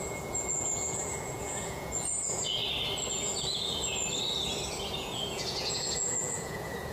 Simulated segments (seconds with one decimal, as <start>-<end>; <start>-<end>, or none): 0.0-2.6; 3.1-3.9; 4.9-6.9